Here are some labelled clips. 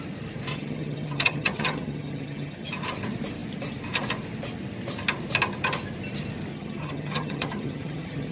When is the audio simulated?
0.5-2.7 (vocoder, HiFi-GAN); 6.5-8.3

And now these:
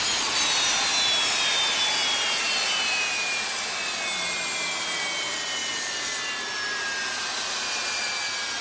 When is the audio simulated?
none

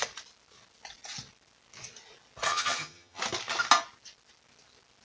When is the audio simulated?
2.5-3.2 (vocoder, HiFi-GAN)

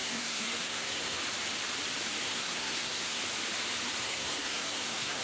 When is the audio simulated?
0.0-1.2 (codec, SNAC); 2.2-3.2; 4.0-5.2

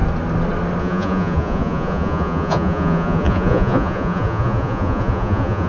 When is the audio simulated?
0.8-5.7 (vocoder, Vocos)

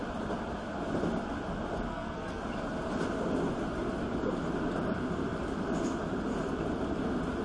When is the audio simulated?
1.9-2.4 (codec, SNAC)

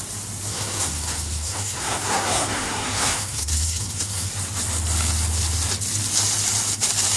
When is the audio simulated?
0.5-4.3 (codec, SNAC)

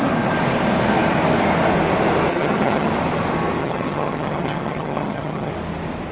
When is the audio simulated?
2.3-2.9 (vocoder, HiFi-GAN); 3.6-5.5